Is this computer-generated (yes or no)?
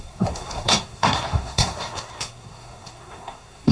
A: yes